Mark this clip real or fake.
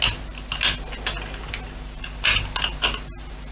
real